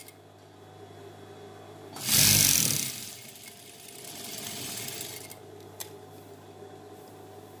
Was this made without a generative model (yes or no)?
yes